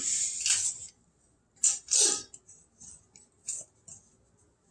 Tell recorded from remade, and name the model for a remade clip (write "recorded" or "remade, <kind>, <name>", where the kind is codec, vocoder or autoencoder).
recorded